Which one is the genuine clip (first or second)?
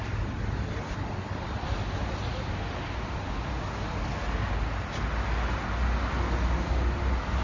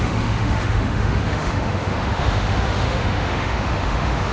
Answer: first